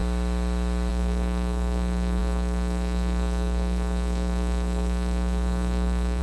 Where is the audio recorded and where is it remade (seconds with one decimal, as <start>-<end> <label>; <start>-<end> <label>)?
0.0-0.9 recorded; 0.9-6.2 remade